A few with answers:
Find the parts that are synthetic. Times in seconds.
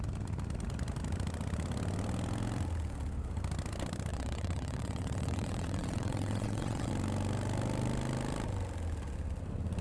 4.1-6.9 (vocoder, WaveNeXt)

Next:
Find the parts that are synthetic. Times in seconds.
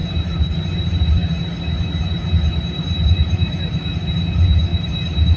none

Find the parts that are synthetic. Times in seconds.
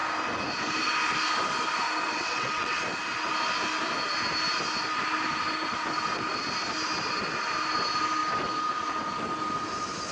2.0-2.8 (vocoder, WaveNeXt)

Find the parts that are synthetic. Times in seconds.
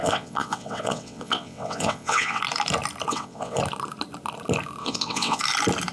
0.0-2.4 (vocoder, WaveNeXt); 3.1-3.6; 4.8-5.4